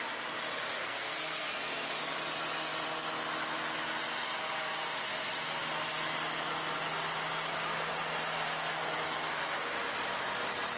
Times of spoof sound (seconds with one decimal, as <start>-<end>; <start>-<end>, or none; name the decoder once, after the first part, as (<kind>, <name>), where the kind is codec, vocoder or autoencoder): 0.8-1.5 (codec, SNAC)